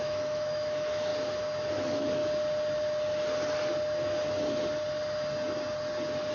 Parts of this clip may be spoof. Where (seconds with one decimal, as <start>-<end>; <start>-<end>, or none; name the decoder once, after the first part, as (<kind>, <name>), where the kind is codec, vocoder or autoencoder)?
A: 0.0-1.1 (autoencoder, DAC-VAE); 1.7-2.2